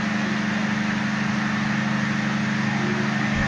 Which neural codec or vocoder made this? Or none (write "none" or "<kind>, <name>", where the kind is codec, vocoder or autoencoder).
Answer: none